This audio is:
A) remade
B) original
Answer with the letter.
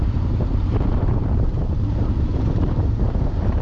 A